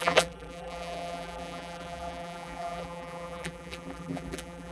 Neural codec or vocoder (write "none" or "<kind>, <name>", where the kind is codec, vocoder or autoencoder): vocoder, BigVGAN v2